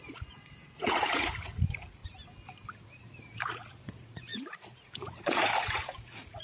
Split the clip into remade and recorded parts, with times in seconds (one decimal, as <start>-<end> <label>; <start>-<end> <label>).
0.0-2.0 remade; 2.0-2.8 recorded; 2.8-6.4 remade